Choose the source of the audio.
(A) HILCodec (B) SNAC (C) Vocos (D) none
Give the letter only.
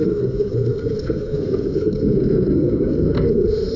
B